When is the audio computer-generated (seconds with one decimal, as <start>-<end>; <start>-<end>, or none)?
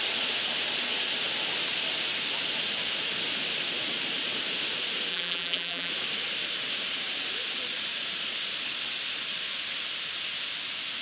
5.1-5.9